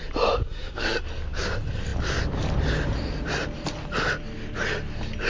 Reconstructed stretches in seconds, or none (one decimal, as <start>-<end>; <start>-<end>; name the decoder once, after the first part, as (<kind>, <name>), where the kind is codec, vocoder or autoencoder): 0.4-1.0 (codec, SNAC)